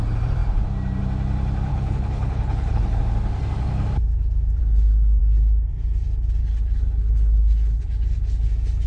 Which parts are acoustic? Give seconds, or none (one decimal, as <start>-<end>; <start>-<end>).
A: 0.0-1.7; 3.0-4.6; 5.2-6.4; 8.5-8.9